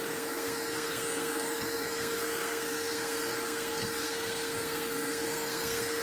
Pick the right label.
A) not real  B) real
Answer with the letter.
A